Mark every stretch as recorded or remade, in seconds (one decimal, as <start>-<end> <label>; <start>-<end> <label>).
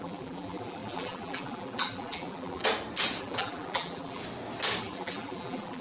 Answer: 0.0-2.6 remade; 2.6-3.2 recorded; 3.2-4.2 remade; 4.2-4.8 recorded; 4.8-5.8 remade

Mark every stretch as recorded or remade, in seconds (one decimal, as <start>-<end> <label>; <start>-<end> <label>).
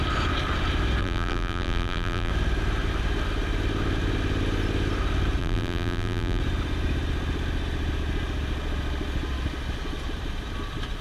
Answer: 0.0-1.0 recorded; 1.0-2.3 remade; 2.3-5.4 recorded; 5.4-6.4 remade; 6.4-11.0 recorded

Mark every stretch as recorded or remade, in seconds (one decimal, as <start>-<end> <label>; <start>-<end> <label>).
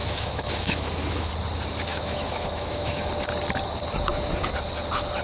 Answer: 0.0-1.3 remade; 1.3-1.9 recorded; 1.9-3.1 remade; 3.1-5.2 recorded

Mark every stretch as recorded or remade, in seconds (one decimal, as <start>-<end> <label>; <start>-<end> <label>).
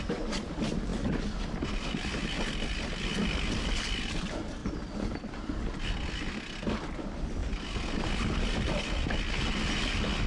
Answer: 0.0-10.3 recorded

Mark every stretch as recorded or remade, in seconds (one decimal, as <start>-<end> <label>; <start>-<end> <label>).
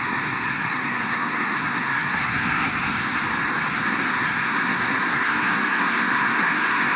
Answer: 0.0-3.2 remade; 3.2-3.7 recorded; 3.7-7.0 remade